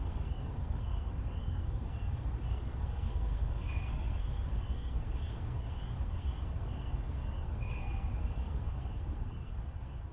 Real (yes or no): no